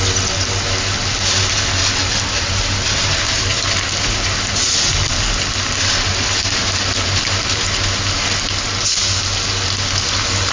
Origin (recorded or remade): recorded